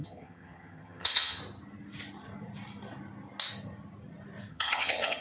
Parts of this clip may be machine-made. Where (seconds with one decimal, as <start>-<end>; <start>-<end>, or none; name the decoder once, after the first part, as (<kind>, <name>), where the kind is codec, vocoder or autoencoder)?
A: 0.0-1.4 (vocoder, HiFi-GAN); 4.5-5.2